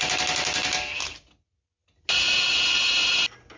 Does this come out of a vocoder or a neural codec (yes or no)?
no